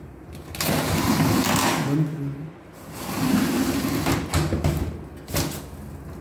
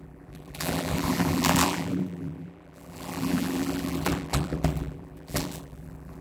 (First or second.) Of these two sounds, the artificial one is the second